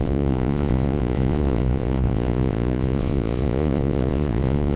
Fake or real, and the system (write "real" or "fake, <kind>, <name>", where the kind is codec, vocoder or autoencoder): fake, vocoder, Vocos